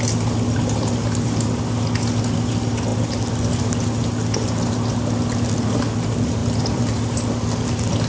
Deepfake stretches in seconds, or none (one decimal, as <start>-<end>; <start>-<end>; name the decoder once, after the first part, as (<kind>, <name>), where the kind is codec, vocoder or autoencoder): none